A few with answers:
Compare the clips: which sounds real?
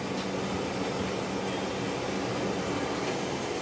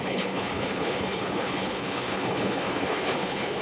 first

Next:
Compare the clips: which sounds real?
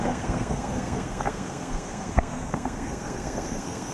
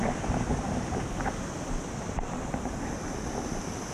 second